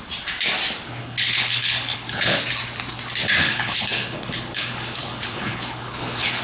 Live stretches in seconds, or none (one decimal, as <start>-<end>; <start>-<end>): 0.0-1.0; 2.4-3.4